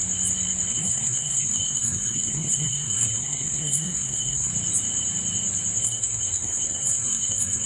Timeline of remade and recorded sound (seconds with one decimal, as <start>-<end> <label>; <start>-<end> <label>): 0.0-0.7 recorded; 0.7-4.5 remade; 4.5-5.8 recorded; 5.8-7.7 remade